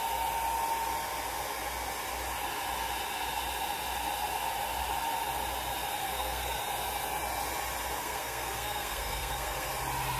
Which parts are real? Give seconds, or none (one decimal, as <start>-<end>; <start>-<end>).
0.0-6.0; 6.6-8.0; 9.7-10.2